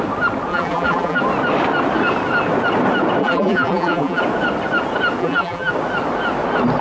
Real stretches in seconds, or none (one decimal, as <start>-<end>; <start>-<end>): 0.0-0.5; 1.2-3.2; 4.2-5.2; 5.7-6.8